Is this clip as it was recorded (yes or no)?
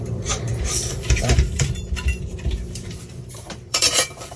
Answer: no